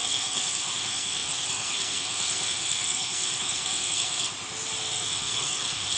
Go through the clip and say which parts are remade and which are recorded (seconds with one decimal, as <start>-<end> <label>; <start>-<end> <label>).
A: 0.0-4.3 remade; 4.3-4.8 recorded; 4.8-6.0 remade